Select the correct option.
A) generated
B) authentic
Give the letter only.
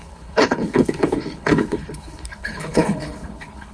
A